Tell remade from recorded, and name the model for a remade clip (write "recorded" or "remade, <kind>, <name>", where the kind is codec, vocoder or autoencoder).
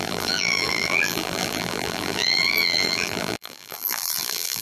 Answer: remade, vocoder, BigVGAN v2